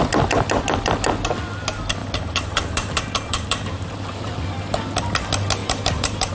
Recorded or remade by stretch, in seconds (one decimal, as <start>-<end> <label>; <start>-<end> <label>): 0.0-2.0 recorded; 2.0-4.3 remade; 4.3-5.6 recorded; 5.6-6.3 remade